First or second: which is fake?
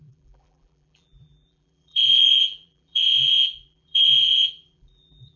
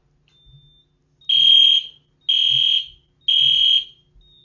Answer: first